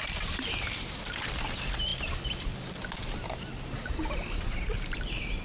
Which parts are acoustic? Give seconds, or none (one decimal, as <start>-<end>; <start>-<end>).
0.0-5.4